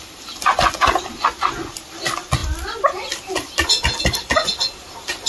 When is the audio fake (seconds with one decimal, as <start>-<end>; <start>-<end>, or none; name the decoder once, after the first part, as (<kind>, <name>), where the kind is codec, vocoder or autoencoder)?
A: none